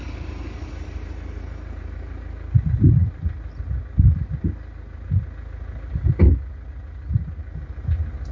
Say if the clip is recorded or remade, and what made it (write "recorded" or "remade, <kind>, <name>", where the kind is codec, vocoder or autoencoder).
recorded